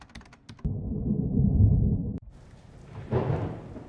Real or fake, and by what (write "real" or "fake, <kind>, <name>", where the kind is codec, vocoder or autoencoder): real